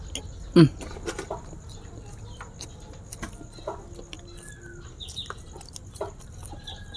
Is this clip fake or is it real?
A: real